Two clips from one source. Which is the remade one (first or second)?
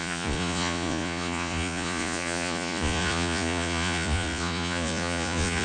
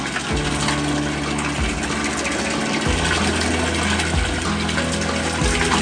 first